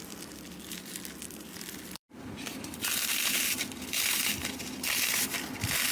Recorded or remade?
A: remade